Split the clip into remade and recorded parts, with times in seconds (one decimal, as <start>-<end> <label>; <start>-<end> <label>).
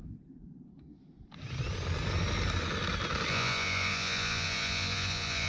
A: 0.0-3.3 recorded; 3.3-5.5 remade